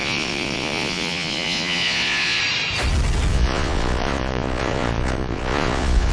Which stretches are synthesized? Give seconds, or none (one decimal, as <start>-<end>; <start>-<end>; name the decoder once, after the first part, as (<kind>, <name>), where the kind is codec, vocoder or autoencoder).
0.0-2.4 (vocoder, Vocos); 3.3-6.1